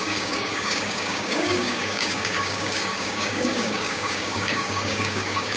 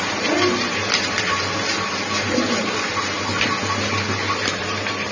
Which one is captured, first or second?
second